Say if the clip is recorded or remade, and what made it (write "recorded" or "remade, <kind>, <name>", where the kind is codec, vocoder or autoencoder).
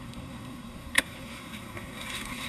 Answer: remade, codec, SNAC